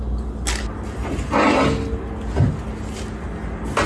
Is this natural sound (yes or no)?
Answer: yes